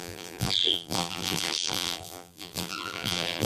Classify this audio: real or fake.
fake